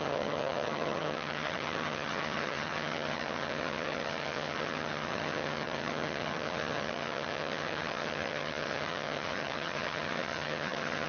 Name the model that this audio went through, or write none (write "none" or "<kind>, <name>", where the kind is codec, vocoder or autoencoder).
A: vocoder, HiFi-GAN